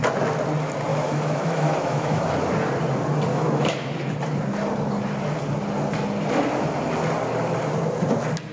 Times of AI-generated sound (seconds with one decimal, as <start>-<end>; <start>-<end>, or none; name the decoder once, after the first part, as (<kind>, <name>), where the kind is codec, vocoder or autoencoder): 0.9-2.2 (autoencoder, DAC-VAE); 3.3-4.0